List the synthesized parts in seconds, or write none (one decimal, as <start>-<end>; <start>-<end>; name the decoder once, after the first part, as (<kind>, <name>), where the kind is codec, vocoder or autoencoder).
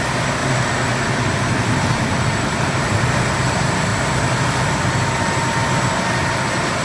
0.0-0.4 (vocoder, BigVGAN v2); 1.1-3.9; 4.8-5.6; 6.2-6.8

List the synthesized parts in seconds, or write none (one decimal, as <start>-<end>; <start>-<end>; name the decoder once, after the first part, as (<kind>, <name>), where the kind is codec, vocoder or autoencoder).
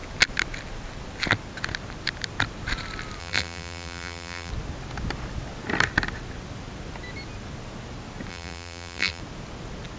3.2-4.5 (vocoder, BigVGAN v2); 8.3-9.2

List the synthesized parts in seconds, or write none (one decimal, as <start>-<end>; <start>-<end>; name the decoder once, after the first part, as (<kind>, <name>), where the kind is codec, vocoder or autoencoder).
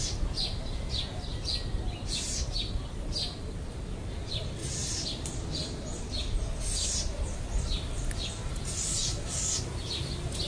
4.6-5.5 (vocoder, BigVGAN v2)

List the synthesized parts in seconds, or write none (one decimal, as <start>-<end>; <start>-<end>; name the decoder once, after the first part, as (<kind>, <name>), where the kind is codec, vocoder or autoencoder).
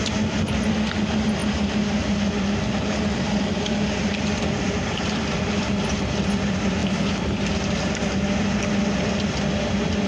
1.4-6.0 (vocoder, BigVGAN v2)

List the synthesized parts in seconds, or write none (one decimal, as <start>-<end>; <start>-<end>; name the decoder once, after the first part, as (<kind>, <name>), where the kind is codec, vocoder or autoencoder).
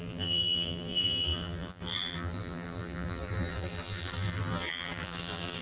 0.0-5.6 (vocoder, BigVGAN v2)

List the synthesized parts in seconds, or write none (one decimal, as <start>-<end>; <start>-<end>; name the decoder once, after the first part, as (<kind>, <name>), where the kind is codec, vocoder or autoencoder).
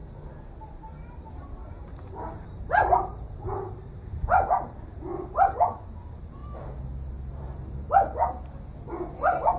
2.3-6.4 (vocoder, BigVGAN v2); 7.3-8.2; 9.2-9.6